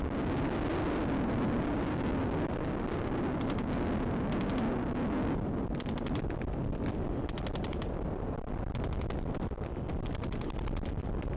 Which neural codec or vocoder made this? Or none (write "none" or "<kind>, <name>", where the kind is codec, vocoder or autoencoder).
none